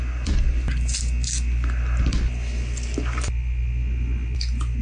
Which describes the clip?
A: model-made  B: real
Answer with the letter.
B